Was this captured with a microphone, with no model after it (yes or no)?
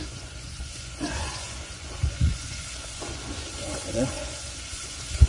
no